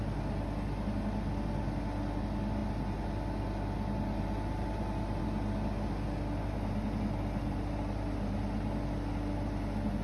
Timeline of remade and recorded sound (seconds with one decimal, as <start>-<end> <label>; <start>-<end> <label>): 0.0-10.0 recorded